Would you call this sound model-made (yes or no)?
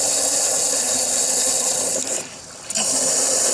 no